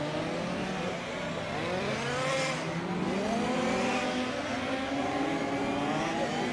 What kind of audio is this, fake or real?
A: real